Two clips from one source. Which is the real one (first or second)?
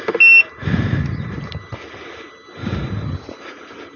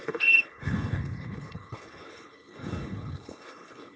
first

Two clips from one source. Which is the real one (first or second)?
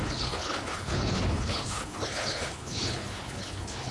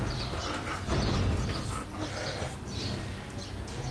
second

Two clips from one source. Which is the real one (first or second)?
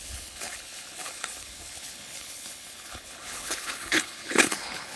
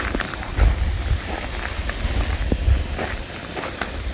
second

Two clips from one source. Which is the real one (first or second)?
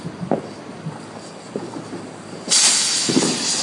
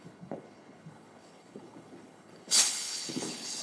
first